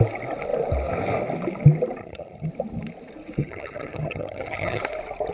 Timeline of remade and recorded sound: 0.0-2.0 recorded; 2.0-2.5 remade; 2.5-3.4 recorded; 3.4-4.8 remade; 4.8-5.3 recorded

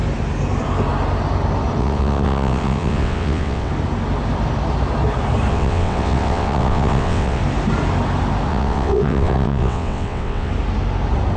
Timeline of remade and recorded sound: 0.0-1.8 recorded; 1.8-3.7 remade; 3.7-5.5 recorded; 5.5-7.4 remade; 7.4-8.5 recorded; 8.5-10.5 remade; 10.5-11.4 recorded

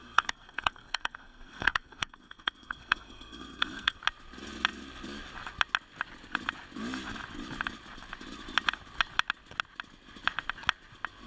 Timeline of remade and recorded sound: 0.0-4.0 remade; 4.0-11.3 recorded

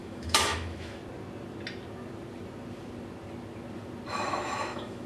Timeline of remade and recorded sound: 0.0-1.0 remade; 1.0-4.1 recorded; 4.1-5.1 remade